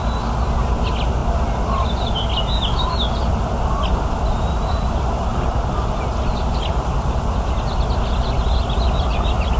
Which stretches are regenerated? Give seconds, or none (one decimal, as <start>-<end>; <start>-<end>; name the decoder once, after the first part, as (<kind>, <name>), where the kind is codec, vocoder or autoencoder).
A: none

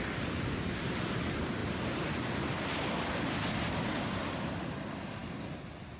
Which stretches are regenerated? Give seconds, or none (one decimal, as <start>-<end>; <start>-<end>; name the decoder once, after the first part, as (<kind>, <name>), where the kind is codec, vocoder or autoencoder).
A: none

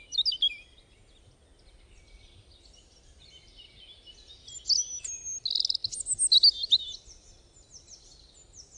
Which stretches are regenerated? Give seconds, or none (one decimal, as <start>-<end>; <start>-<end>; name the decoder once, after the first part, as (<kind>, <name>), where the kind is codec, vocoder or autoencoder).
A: none